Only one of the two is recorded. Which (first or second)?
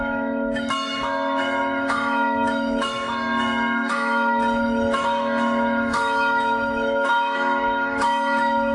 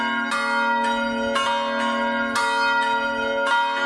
second